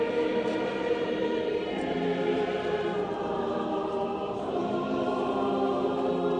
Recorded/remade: remade